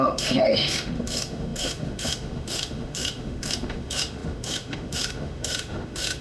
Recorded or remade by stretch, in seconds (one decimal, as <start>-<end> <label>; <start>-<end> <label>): 0.0-6.2 remade